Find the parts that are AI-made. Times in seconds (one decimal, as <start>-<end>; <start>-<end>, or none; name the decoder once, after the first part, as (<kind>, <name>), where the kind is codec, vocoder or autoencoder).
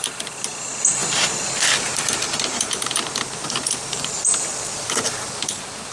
3.8-5.3 (vocoder, BigVGAN v2)